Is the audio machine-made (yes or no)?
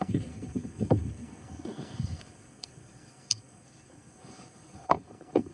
yes